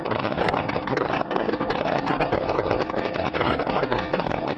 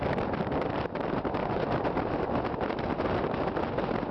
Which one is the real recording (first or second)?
second